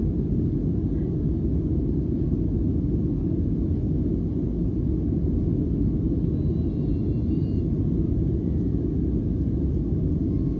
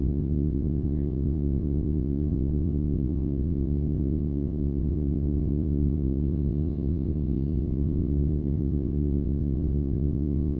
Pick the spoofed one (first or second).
second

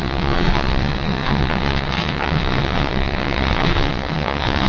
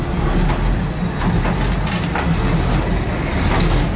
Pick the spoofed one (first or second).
first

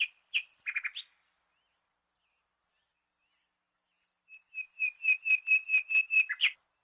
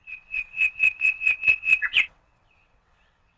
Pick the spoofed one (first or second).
second